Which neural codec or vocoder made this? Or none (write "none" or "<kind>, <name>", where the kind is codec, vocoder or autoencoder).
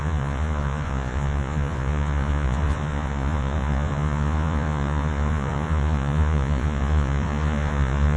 vocoder, Vocos